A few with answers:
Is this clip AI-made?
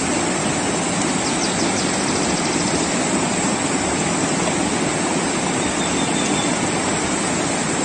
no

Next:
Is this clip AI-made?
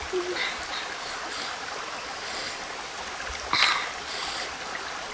no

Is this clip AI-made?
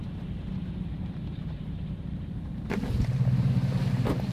yes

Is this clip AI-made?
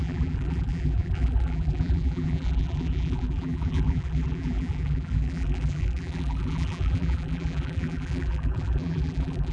yes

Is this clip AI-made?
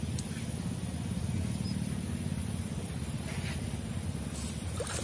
no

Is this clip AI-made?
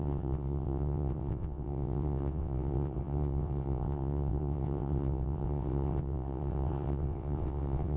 yes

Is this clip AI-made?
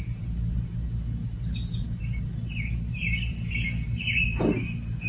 no